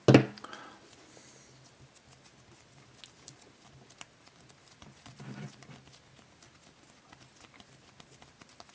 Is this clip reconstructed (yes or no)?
no